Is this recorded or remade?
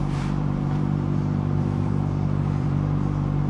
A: remade